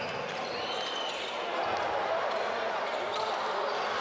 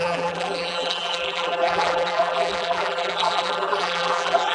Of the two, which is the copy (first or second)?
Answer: second